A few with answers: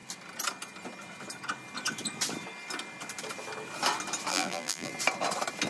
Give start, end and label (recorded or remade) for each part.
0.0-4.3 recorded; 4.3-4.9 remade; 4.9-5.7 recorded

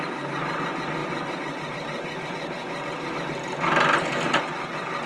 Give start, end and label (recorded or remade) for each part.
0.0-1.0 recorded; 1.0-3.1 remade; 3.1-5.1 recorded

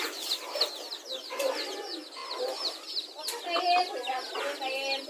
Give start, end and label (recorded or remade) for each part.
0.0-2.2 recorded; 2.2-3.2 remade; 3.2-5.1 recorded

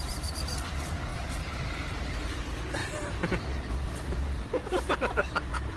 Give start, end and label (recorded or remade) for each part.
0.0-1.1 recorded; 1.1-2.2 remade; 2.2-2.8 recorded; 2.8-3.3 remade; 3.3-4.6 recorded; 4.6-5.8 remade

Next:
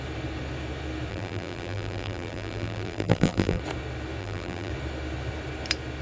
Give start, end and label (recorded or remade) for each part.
0.0-1.1 recorded; 1.1-3.6 remade; 3.6-4.2 recorded; 4.2-4.7 remade; 4.7-6.0 recorded

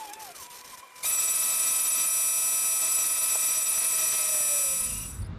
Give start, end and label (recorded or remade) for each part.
0.0-2.1 remade; 2.1-2.8 recorded; 2.8-4.3 remade; 4.3-4.8 recorded; 4.8-5.4 remade